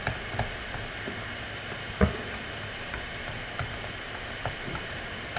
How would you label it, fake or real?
fake